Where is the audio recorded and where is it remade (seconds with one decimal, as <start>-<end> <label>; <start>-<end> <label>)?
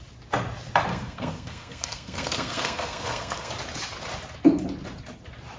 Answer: 0.0-0.9 recorded; 0.9-3.5 remade; 3.5-5.6 recorded